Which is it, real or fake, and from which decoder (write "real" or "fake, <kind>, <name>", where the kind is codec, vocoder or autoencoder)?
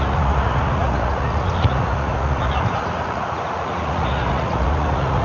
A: fake, vocoder, Vocos